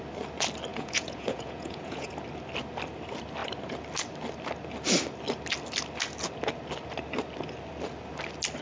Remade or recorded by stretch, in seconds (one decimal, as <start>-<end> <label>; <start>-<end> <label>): 0.0-0.7 recorded; 0.7-2.1 remade; 2.1-8.6 recorded